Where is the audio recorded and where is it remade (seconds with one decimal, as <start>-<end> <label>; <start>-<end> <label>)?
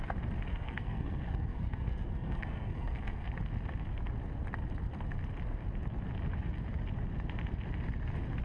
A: 0.0-0.5 recorded; 0.5-3.3 remade; 3.3-8.4 recorded